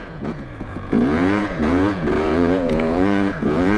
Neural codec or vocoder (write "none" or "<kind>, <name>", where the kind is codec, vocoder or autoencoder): vocoder, Vocos